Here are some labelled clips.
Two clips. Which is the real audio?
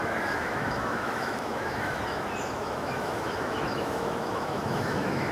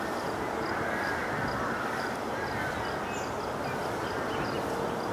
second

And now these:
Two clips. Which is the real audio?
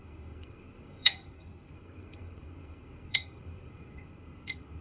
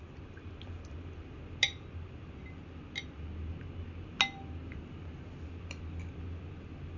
second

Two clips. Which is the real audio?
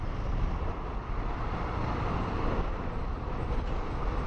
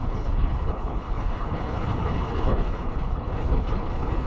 first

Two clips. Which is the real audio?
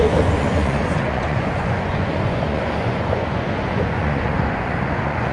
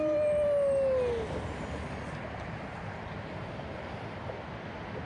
second